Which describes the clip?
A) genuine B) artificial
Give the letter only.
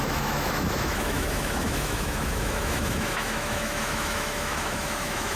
B